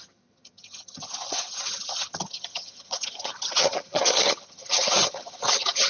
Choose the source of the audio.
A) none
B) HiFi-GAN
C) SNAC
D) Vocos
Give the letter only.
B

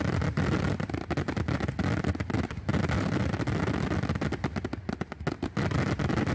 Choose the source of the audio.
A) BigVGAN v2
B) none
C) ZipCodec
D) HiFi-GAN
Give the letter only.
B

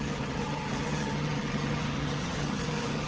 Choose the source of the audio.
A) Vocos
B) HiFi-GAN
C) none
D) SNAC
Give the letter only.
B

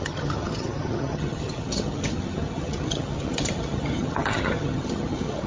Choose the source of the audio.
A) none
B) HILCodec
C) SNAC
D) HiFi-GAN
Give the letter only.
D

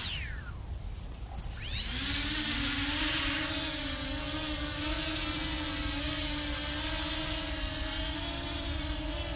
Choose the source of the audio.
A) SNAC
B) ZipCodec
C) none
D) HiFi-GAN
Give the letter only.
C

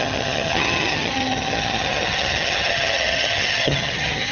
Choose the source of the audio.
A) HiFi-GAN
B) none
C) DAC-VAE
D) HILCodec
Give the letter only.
A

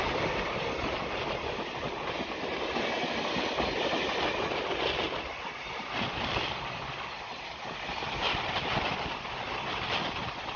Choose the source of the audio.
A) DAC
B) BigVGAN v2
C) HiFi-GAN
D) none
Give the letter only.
D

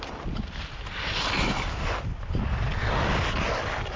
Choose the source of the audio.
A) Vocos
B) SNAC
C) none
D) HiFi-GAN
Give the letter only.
C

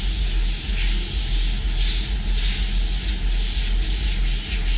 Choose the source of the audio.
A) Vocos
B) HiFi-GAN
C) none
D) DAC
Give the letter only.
C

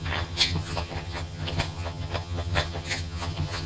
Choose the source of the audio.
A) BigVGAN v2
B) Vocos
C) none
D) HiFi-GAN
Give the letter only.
D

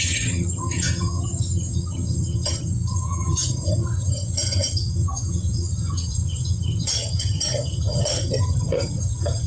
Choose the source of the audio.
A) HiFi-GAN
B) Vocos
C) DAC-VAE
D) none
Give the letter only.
A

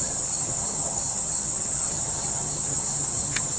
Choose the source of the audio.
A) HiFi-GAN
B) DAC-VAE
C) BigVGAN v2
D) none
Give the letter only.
A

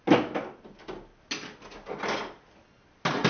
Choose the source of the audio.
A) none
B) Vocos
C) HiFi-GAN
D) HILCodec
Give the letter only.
A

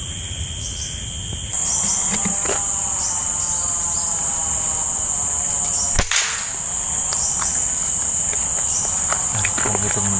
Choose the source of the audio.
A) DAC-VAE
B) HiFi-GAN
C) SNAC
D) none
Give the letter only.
D